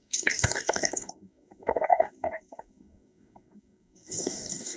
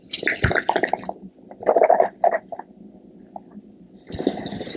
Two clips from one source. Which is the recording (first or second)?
second